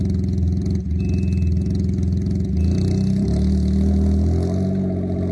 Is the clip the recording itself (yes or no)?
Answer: yes